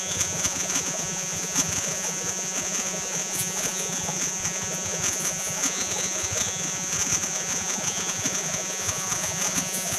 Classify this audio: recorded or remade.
remade